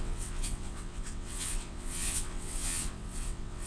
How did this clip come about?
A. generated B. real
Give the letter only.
A